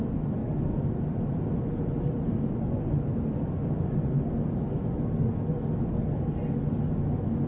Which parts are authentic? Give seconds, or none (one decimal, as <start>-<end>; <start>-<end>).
0.0-7.5